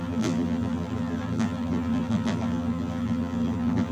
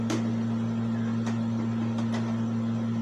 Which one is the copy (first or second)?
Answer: first